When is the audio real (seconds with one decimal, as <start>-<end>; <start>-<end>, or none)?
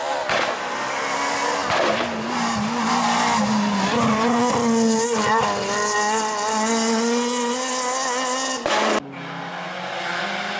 0.0-10.6